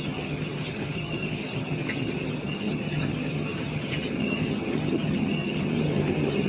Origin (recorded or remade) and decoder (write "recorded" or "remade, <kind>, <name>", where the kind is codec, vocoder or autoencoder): remade, vocoder, HiFi-GAN